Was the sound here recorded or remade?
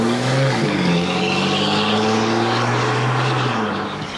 remade